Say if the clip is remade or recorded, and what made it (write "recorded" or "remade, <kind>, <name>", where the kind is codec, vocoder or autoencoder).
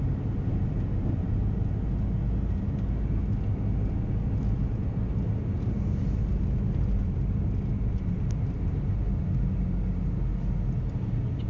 recorded